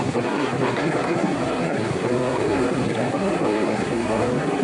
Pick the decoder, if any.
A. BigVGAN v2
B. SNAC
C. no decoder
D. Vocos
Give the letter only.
B